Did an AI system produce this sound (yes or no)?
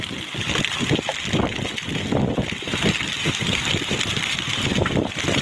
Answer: yes